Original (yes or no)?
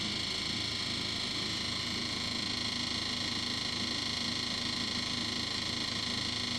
yes